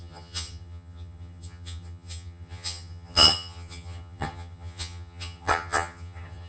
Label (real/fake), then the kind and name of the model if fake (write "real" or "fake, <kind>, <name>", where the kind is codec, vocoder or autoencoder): fake, vocoder, HiFi-GAN